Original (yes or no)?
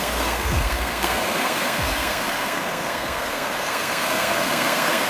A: no